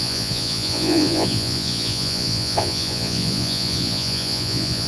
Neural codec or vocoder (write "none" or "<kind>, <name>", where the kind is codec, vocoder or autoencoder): vocoder, Vocos